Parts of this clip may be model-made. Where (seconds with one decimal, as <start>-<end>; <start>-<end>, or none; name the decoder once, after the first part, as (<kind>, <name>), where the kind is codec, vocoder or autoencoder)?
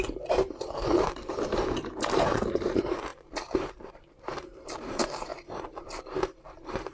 0.0-6.9 (vocoder, BigVGAN v2)